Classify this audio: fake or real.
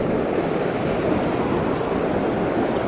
real